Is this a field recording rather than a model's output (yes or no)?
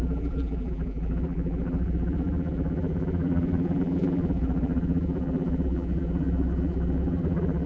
no